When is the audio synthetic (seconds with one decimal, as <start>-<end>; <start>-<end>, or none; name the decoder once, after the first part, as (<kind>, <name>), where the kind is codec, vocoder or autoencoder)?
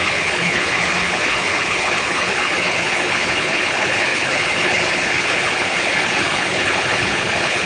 0.0-7.7 (codec, HILCodec)